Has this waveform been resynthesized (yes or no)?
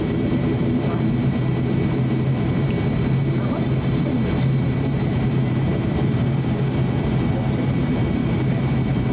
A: yes